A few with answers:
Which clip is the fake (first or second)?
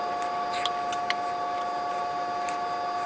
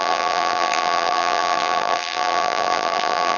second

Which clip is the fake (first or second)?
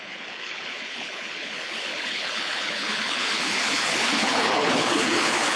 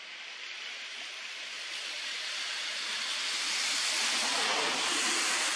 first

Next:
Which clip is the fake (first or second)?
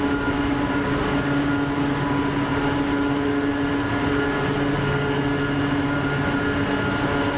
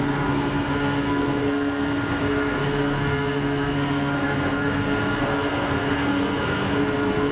second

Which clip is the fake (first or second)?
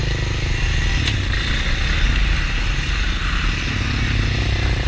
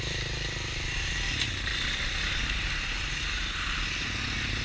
second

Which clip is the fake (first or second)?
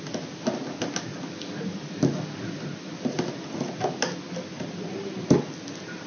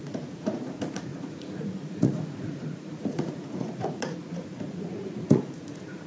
second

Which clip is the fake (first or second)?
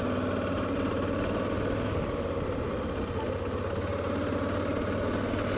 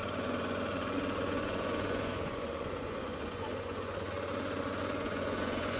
second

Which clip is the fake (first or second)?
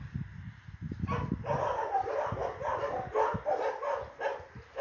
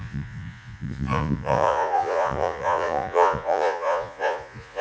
second